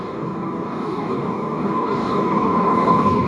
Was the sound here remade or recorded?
remade